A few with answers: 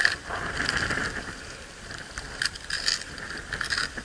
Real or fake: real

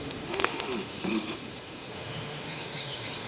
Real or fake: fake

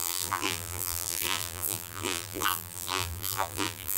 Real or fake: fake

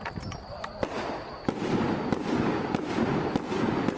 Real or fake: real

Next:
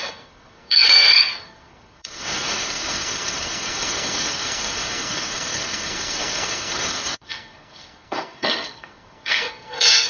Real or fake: fake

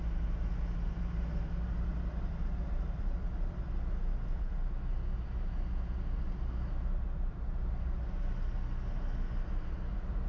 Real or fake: real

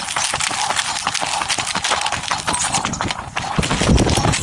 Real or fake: real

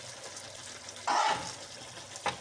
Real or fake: real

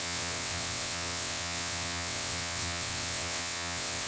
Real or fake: fake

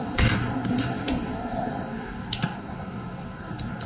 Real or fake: fake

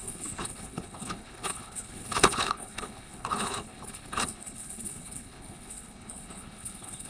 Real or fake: fake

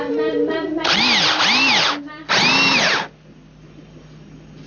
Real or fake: real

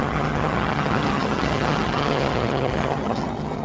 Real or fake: fake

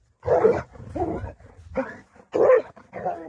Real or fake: real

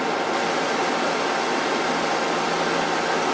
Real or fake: real